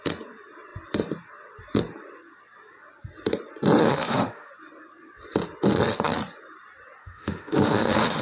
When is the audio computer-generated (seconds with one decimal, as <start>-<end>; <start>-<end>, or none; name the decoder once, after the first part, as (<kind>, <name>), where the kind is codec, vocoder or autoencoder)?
3.8-4.5 (autoencoder, DAC-VAE); 7.0-8.2

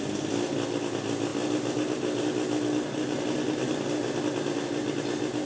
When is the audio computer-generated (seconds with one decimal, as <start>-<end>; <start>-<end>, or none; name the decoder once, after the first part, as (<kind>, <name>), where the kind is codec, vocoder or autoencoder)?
none

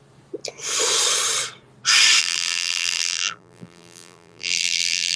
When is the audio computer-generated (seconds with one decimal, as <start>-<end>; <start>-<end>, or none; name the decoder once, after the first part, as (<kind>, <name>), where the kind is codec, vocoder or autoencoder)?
2.2-5.2 (vocoder, BigVGAN v2)

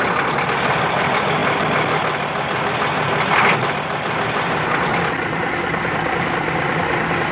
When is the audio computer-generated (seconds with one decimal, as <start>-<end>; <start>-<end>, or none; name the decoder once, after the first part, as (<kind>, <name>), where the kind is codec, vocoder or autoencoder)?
0.0-7.3 (vocoder, BigVGAN v2)